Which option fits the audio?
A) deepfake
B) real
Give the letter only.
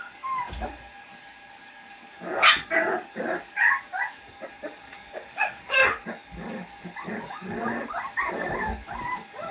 A